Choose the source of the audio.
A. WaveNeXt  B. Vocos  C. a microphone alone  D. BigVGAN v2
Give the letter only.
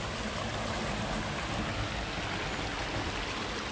C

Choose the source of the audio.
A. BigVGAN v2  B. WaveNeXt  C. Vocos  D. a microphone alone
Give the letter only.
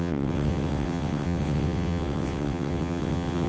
B